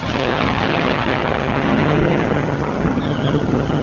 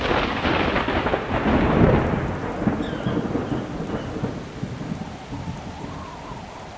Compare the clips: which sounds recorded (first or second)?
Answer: second